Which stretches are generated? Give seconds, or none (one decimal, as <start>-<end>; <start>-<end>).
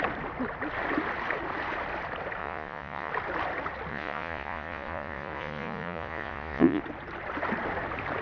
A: 2.4-3.1; 3.9-6.8